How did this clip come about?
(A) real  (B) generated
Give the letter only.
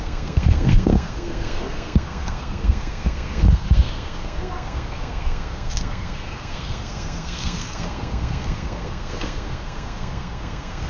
B